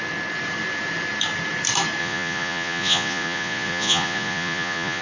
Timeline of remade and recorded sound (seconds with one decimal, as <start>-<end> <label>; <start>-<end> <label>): 0.0-2.0 recorded; 2.0-5.0 remade